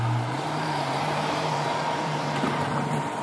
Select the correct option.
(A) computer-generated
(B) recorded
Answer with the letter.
A